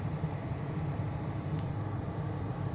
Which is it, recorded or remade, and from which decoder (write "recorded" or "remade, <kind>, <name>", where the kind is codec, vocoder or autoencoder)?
recorded